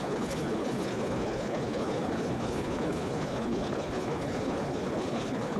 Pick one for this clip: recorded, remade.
remade